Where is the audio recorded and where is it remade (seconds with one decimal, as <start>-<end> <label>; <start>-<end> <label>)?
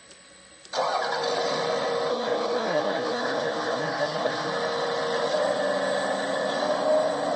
0.0-2.1 recorded; 2.1-4.5 remade; 4.5-7.4 recorded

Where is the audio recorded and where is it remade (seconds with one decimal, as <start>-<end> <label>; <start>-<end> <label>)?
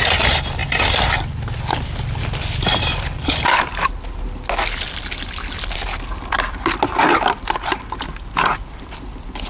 0.0-9.5 recorded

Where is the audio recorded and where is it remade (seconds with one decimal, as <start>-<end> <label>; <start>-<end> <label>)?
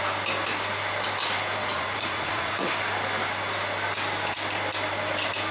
0.0-1.6 recorded; 1.6-2.7 remade; 2.7-5.5 recorded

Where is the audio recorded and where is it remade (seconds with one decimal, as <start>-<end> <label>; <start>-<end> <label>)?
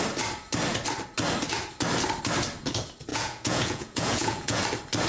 0.0-3.1 recorded; 3.1-4.6 remade; 4.6-5.1 recorded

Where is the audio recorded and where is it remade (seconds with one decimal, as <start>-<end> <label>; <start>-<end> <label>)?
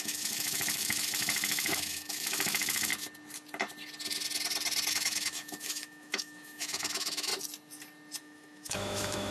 0.0-2.9 remade; 2.9-4.9 recorded; 4.9-7.3 remade; 7.3-8.2 recorded; 8.2-9.3 remade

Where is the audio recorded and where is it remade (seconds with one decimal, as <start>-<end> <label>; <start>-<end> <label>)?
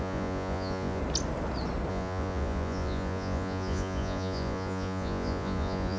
0.0-1.0 remade; 1.0-1.9 recorded; 1.9-6.0 remade